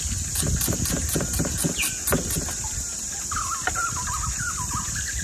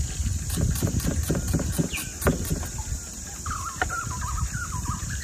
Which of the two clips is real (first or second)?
first